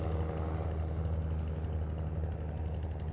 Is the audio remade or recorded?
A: recorded